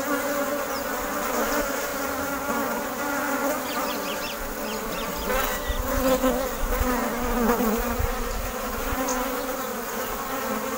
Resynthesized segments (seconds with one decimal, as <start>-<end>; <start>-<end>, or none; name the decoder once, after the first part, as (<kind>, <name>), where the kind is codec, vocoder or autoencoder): 1.9-4.2 (vocoder, BigVGAN v2)